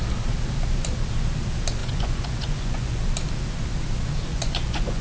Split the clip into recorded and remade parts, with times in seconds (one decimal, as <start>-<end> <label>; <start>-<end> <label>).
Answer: 0.0-1.8 recorded; 1.8-3.0 remade; 3.0-4.3 recorded; 4.3-5.0 remade